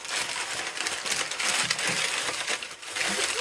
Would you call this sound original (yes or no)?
yes